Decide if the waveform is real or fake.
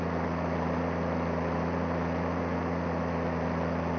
real